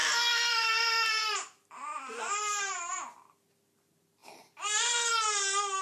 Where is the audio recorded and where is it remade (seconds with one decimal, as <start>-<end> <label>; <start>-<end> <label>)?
0.0-3.5 remade; 3.5-4.2 recorded; 4.2-5.1 remade; 5.1-5.8 recorded